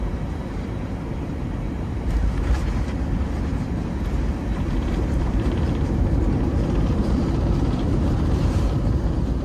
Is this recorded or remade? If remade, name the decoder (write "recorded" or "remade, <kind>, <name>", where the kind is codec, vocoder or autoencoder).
remade, vocoder, BigVGAN v2